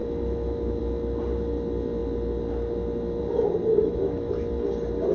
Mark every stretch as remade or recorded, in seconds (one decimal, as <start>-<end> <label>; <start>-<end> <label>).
0.0-0.8 remade; 0.8-3.8 recorded; 3.8-4.3 remade; 4.3-5.1 recorded